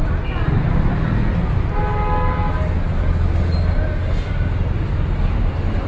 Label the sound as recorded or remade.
recorded